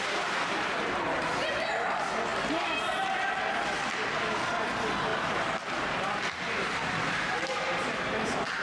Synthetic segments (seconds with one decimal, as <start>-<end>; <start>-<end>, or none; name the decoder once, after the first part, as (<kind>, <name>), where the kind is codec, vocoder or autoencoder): none